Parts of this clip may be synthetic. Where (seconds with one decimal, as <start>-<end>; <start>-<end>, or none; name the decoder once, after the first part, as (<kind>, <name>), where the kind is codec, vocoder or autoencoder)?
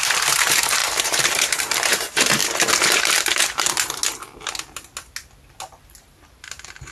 0.0-2.4 (vocoder, BigVGAN v2); 3.0-4.0; 5.6-6.9